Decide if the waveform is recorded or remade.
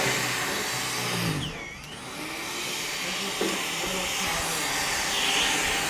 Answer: recorded